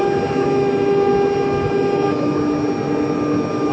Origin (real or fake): real